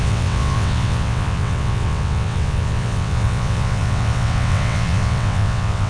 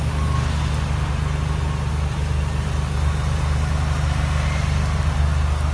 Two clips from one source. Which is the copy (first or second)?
first